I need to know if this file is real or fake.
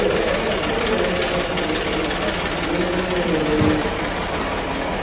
real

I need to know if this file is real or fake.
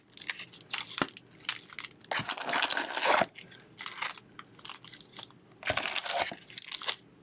real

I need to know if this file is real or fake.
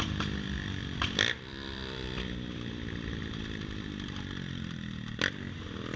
fake